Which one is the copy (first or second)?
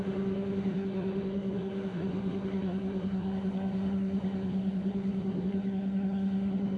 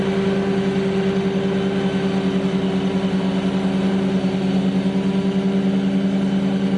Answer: first